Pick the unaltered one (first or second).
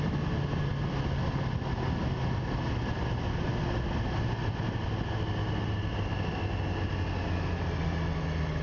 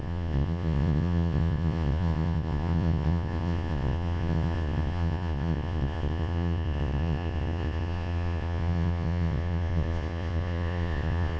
first